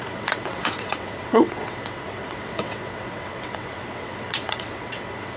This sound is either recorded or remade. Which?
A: remade